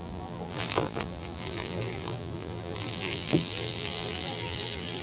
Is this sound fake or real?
fake